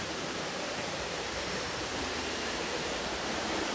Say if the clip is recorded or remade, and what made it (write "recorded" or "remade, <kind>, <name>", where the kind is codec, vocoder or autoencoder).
remade, vocoder, BigVGAN v2